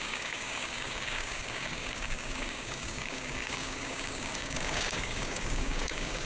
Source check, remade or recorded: remade